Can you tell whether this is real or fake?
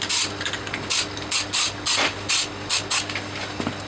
real